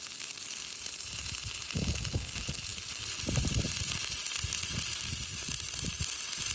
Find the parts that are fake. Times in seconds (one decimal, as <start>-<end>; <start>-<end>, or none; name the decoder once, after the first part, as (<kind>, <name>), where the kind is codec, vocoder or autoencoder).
none

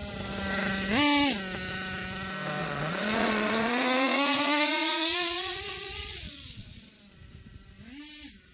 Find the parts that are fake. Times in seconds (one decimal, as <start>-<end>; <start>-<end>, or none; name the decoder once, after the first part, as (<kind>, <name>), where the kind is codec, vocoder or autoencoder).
2.6-7.0 (vocoder, Vocos)

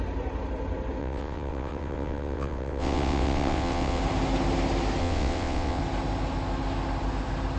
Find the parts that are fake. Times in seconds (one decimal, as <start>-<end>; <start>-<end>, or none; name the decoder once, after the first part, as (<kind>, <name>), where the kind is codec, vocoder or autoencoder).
1.0-4.0 (vocoder, WaveNeXt); 5.0-5.8

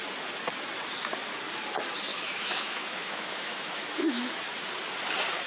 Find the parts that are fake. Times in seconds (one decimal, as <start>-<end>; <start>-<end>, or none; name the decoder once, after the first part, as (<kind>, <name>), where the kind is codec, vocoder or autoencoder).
2.1-4.4 (autoencoder, DAC-VAE)

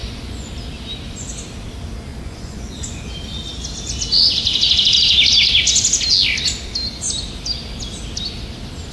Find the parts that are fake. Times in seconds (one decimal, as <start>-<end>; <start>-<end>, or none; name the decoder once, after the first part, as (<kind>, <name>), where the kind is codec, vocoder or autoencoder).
0.0-0.5 (vocoder, Vocos); 2.1-3.0

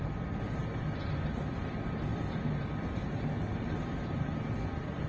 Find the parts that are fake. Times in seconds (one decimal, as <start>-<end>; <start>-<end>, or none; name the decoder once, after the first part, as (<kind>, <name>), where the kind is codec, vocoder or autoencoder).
0.0-0.6 (vocoder, BigVGAN v2); 1.3-5.1